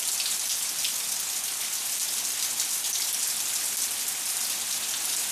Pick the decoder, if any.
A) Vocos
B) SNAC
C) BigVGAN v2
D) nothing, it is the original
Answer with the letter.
D